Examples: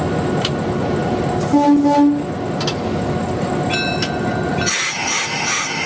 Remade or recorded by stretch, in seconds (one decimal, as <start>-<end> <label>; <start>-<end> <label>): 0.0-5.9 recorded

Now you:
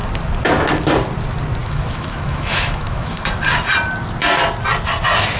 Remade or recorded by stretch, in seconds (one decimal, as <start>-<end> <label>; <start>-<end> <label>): 0.0-1.6 recorded; 1.6-3.3 remade; 3.3-5.4 recorded

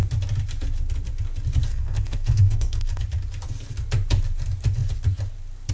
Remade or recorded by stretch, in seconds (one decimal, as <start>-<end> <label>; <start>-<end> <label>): 0.0-1.7 recorded; 1.7-3.0 remade; 3.0-5.7 recorded

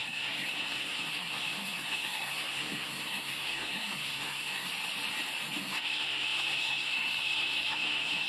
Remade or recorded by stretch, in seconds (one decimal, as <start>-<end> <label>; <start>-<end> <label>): 0.0-4.7 remade; 4.7-5.6 recorded; 5.6-8.3 remade

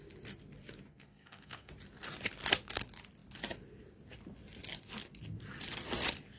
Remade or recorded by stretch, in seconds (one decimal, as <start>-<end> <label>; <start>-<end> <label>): 0.0-0.9 recorded; 0.9-1.7 remade; 1.7-6.4 recorded